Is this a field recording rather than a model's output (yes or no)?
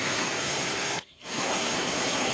no